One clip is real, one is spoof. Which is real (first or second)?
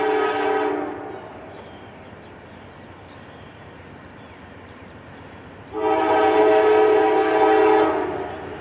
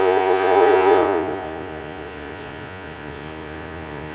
first